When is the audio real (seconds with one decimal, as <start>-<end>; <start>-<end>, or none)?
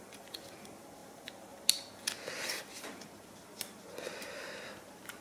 1.0-2.3